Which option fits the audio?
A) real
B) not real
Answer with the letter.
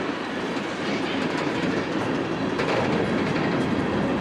A